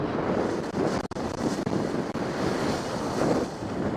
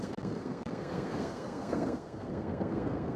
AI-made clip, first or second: second